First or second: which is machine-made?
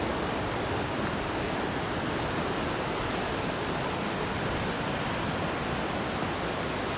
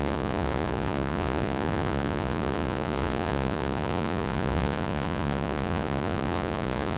second